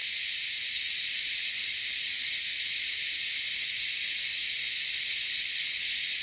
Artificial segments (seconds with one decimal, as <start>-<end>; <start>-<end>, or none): 0.0-1.5